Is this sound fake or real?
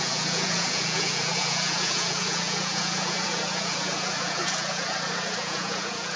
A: fake